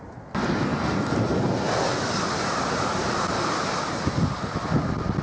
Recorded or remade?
recorded